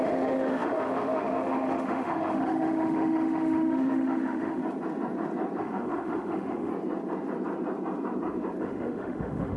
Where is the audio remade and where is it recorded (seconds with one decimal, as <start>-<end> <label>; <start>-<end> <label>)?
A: 0.0-4.6 remade; 4.6-5.6 recorded; 5.6-6.7 remade; 6.7-8.6 recorded; 8.6-9.6 remade